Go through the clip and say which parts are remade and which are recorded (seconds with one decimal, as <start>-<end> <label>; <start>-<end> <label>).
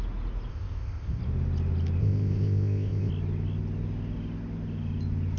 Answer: 0.0-0.5 recorded; 0.5-1.2 remade; 1.2-2.0 recorded; 2.0-3.1 remade; 3.1-5.4 recorded